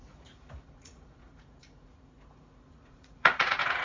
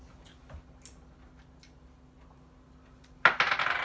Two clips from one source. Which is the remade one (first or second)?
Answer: first